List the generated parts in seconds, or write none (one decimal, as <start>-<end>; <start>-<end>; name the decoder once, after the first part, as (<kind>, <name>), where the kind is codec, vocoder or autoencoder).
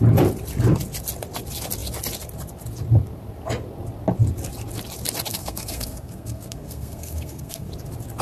5.3-7.7 (codec, SNAC)